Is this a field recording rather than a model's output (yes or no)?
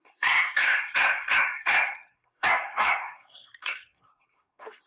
no